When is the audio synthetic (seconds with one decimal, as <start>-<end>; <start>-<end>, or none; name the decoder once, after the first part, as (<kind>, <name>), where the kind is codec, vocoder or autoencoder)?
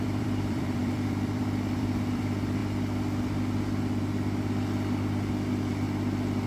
0.0-2.6 (vocoder, BigVGAN v2)